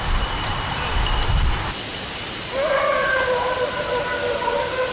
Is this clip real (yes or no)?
yes